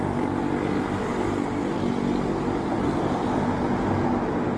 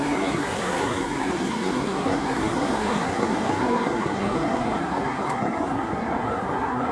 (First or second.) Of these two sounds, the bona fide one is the first